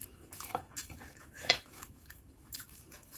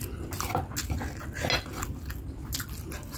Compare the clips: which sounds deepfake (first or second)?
first